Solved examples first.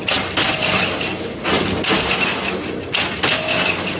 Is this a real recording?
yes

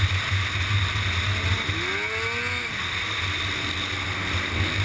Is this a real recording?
yes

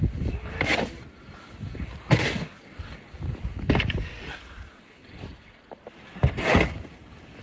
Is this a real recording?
yes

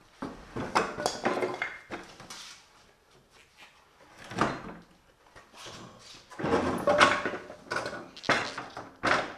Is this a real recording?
yes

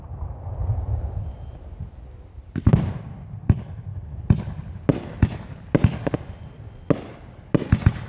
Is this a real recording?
yes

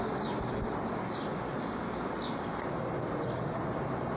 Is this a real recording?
yes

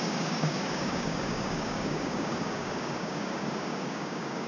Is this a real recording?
no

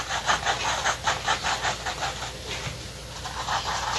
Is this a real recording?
yes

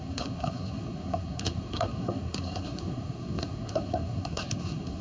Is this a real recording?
no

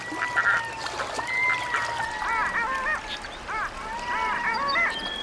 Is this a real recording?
yes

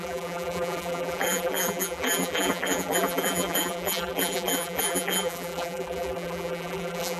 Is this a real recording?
no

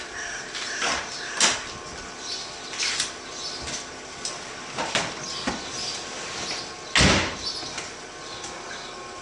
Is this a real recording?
yes